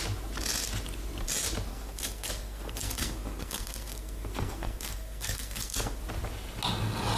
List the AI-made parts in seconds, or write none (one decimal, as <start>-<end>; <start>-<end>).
1.7-6.0